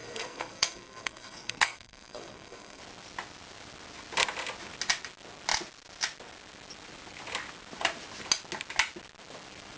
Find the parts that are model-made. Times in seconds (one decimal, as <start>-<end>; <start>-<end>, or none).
0.0-2.8